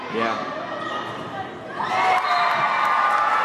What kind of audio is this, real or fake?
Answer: real